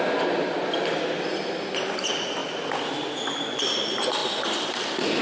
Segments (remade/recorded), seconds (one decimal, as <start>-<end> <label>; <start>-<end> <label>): 0.0-5.2 recorded